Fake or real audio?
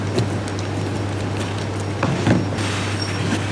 real